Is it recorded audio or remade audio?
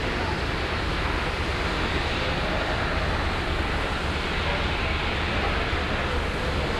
recorded